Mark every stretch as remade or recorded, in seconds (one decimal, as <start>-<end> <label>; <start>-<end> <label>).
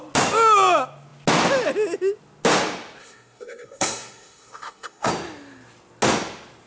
0.0-3.0 recorded; 3.0-5.1 remade; 5.1-6.7 recorded